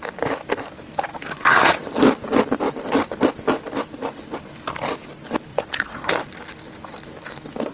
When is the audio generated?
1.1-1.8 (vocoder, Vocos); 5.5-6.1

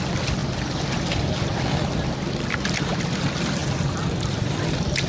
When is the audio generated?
none

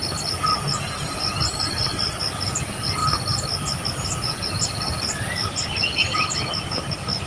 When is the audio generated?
none

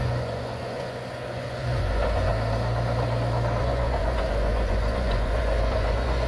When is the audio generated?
0.0-2.3 (vocoder, Vocos); 3.6-6.3

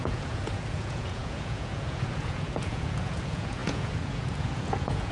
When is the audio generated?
0.0-5.1 (vocoder, Vocos)